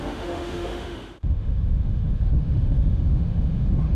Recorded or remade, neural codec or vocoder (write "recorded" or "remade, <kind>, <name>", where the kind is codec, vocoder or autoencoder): remade, autoencoder, DAC-VAE